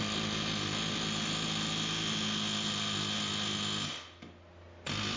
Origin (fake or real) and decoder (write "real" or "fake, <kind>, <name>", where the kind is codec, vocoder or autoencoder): real